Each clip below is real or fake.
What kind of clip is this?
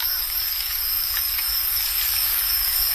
fake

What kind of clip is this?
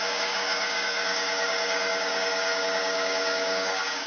fake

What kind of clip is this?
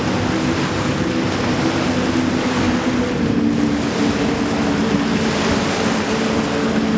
real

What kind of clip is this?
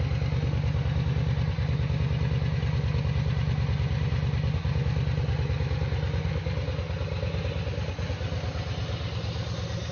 real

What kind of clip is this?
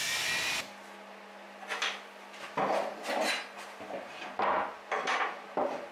real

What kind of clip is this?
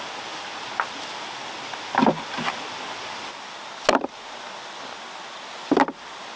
real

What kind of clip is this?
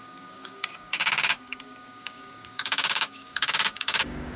fake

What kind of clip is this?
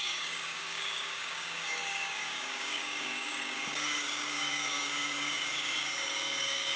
fake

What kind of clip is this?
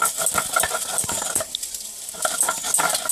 real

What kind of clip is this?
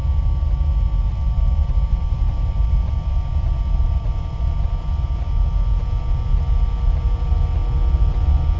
real